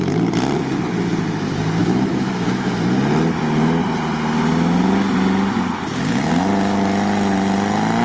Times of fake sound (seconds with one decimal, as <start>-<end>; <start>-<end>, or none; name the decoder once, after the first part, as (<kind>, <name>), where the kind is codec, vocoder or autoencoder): 1.8-2.7 (autoencoder, DAC-VAE)